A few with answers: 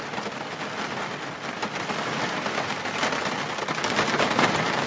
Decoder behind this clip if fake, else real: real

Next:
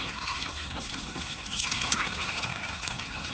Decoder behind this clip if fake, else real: fake, codec, SNAC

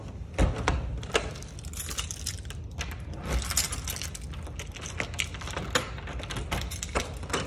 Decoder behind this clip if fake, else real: real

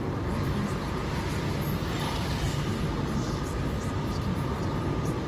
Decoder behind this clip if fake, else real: real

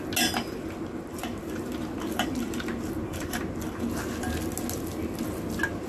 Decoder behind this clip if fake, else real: real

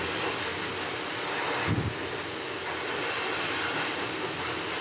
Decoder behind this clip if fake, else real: real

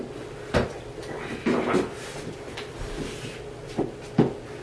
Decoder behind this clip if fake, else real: real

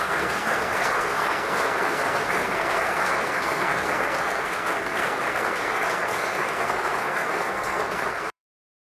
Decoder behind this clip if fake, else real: fake, codec, SNAC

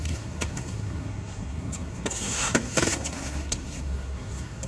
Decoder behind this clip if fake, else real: fake, codec, SNAC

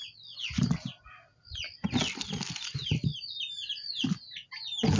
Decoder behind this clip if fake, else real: real